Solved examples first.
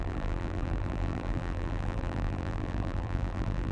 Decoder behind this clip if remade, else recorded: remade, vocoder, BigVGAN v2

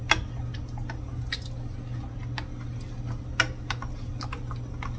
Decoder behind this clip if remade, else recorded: recorded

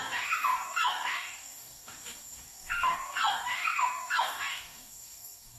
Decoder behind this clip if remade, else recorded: remade, codec, DAC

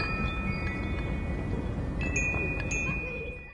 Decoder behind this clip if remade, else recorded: recorded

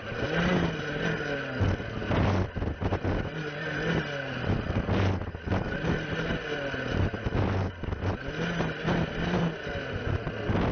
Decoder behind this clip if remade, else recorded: recorded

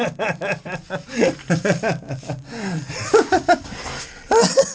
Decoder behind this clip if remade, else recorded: recorded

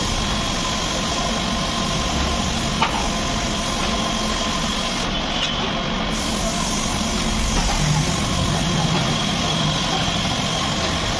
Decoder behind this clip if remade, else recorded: recorded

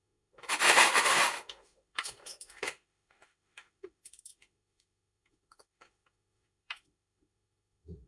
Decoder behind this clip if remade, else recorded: remade, autoencoder, DAC-VAE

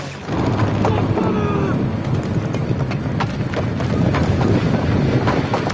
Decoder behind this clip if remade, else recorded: recorded